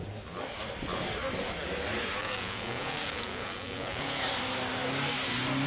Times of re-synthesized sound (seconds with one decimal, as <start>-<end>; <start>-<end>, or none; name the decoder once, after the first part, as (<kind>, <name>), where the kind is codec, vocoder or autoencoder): 2.2-4.2 (vocoder, Vocos)